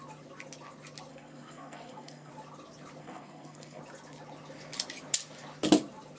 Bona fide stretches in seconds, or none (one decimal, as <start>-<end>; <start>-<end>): 0.0-1.1; 2.3-3.0; 3.8-6.2